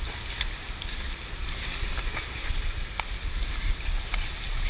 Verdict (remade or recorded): recorded